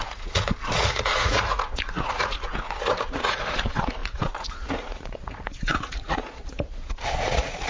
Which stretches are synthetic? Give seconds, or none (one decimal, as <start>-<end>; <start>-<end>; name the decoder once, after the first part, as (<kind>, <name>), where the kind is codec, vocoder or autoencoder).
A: 0.0-7.7 (vocoder, Vocos)